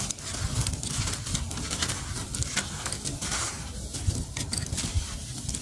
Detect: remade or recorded recorded